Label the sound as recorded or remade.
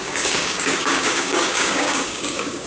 remade